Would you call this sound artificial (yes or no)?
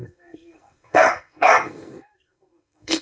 yes